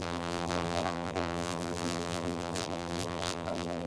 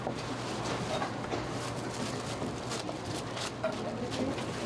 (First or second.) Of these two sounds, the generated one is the first